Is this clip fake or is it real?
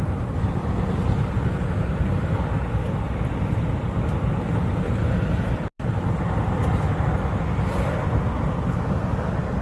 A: real